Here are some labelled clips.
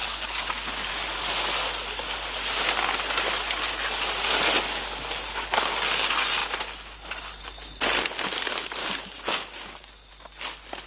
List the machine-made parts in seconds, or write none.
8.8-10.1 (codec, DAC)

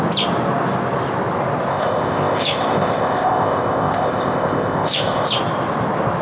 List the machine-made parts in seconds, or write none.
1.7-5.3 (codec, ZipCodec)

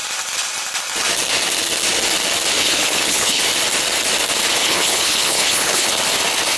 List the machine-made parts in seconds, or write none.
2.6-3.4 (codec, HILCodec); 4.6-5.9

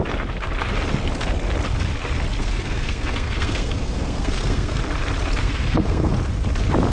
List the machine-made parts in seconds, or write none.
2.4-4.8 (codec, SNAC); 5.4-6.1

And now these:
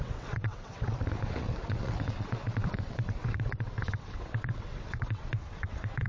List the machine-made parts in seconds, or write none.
0.0-6.1 (vocoder, WaveNeXt)